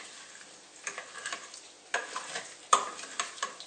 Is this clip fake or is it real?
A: real